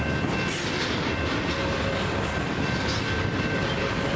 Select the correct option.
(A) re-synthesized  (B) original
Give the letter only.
B